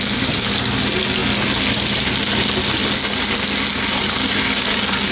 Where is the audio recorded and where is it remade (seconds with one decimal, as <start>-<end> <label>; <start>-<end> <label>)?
0.0-5.1 recorded